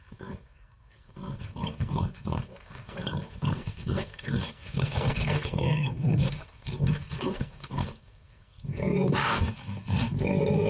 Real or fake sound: fake